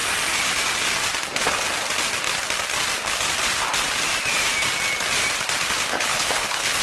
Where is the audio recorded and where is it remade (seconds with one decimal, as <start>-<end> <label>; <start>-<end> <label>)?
0.0-5.9 recorded; 5.9-6.8 remade